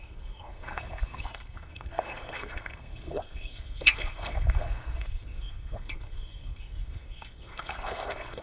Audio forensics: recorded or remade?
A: remade